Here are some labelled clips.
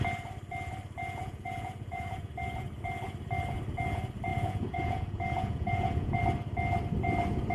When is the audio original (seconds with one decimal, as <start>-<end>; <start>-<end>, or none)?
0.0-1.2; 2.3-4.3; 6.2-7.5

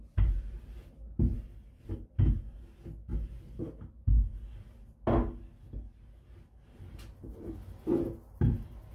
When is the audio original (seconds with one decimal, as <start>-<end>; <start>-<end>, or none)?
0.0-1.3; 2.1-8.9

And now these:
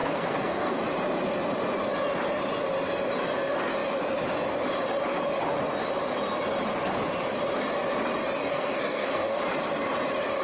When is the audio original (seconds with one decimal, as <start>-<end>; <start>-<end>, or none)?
0.8-8.5; 9.4-10.4

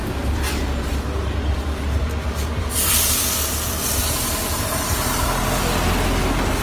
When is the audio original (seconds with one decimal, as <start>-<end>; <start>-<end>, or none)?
4.0-6.6

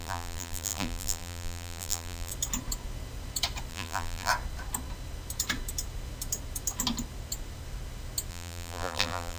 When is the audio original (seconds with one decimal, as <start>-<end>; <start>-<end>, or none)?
2.3-3.7; 4.3-8.3